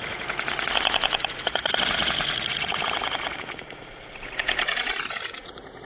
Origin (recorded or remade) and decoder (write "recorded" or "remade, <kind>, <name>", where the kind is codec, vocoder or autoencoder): remade, vocoder, Vocos